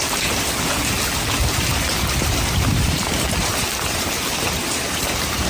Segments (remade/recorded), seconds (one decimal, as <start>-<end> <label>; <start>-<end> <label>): 0.0-2.7 recorded; 2.7-5.1 remade; 5.1-5.5 recorded